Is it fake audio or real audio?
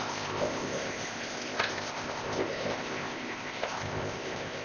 fake